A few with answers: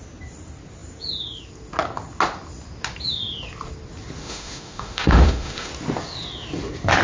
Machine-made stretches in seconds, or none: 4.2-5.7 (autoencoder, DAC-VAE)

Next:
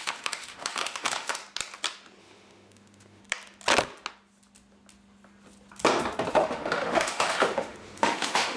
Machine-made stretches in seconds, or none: 0.0-1.4 (autoencoder, DAC-VAE); 2.2-3.2; 6.3-8.6

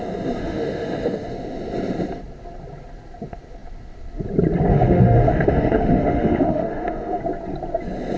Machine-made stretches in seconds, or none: 0.4-1.3 (autoencoder, DAC-VAE); 4.7-7.2